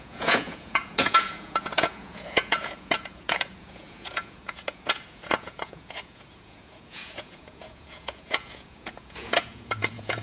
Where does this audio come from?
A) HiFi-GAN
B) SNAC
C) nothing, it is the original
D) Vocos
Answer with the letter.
D